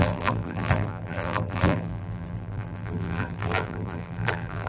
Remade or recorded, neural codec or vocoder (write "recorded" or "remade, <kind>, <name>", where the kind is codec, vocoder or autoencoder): remade, vocoder, BigVGAN v2